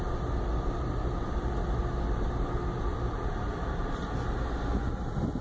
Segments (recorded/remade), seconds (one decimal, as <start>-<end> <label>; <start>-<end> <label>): 0.0-5.4 recorded